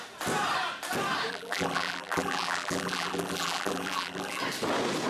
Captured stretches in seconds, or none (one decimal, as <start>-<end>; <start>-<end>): 0.0-1.3; 4.4-5.1

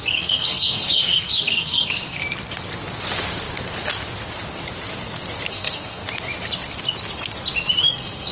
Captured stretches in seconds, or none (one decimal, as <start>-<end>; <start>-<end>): 2.2-5.5; 6.0-7.9

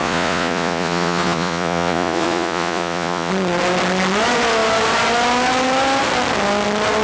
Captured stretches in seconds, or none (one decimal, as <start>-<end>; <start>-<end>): 3.3-7.0

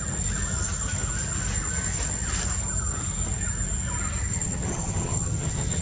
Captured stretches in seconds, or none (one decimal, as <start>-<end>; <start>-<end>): 0.0-4.3